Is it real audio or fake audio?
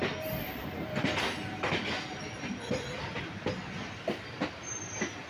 real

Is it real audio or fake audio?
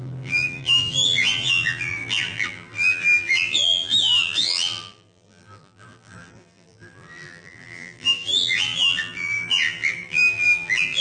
fake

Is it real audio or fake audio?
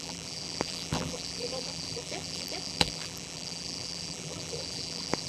fake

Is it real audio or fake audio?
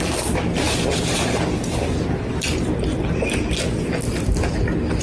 real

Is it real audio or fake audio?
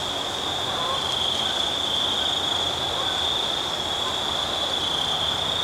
real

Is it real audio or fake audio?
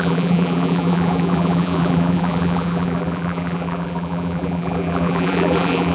fake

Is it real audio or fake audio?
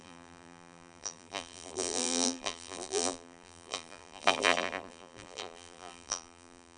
fake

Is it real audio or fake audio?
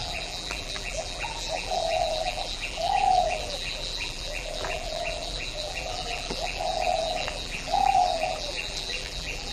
fake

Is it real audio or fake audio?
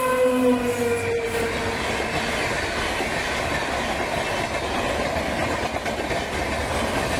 real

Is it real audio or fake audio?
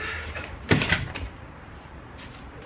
fake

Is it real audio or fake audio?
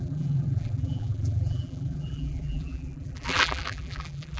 fake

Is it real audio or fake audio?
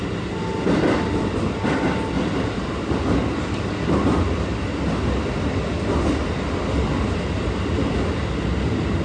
real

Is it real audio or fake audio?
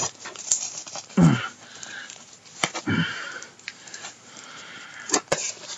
fake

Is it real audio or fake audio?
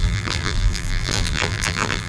fake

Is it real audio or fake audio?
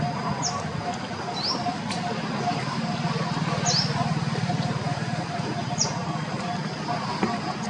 real